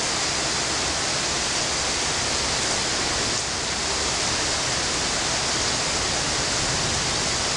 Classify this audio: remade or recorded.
recorded